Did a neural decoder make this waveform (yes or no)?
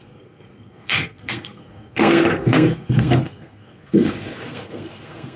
yes